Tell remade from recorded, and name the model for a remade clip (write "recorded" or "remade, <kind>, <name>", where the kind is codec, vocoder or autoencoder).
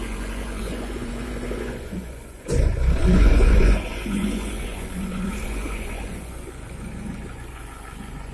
remade, vocoder, Vocos